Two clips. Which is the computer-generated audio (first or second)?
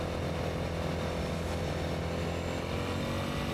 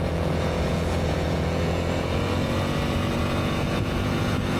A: second